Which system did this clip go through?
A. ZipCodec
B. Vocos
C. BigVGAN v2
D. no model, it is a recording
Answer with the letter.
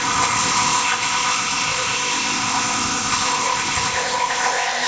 A